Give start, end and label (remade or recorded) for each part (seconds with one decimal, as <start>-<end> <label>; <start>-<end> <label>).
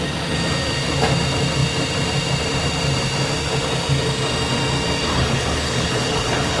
0.0-5.1 recorded; 5.1-6.6 remade